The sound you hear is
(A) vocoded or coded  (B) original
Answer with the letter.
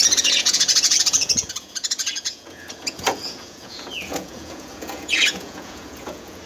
A